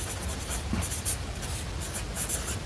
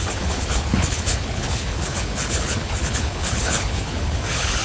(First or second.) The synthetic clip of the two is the second